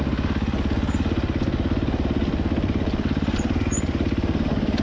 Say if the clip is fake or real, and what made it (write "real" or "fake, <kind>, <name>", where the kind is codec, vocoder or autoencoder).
real